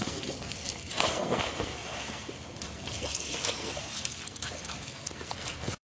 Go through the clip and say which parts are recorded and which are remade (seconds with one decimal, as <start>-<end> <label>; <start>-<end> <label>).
0.0-5.9 remade